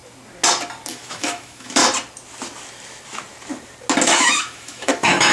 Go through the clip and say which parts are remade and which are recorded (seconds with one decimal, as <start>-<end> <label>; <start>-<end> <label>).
0.0-0.9 recorded; 0.9-1.8 remade; 1.8-4.2 recorded; 4.2-5.3 remade